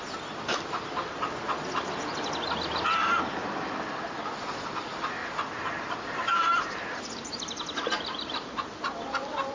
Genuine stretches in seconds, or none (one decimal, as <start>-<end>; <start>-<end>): 0.0-5.2; 8.5-9.5